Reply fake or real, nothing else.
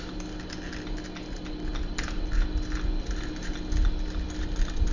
real